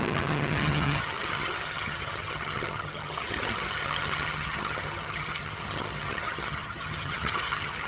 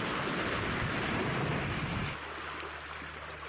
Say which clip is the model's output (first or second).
first